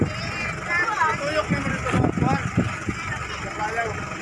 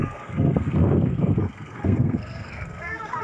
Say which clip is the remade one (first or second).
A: second